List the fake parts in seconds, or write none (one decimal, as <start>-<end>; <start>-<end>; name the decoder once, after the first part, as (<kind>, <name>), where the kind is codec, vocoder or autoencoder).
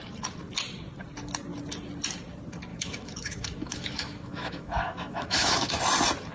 2.7-5.8 (autoencoder, DAC-VAE)